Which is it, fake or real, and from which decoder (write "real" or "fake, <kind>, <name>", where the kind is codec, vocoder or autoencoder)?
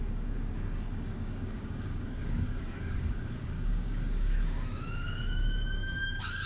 fake, codec, DAC